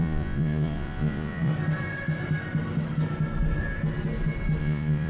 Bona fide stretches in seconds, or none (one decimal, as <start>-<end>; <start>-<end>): 1.5-4.6